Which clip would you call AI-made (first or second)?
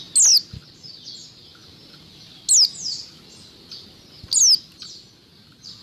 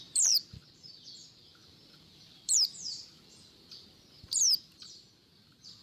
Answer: second